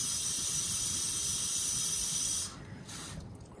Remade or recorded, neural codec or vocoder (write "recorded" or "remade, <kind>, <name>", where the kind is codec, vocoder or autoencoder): recorded